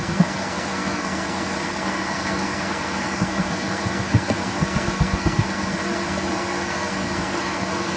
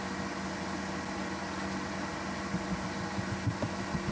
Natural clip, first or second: second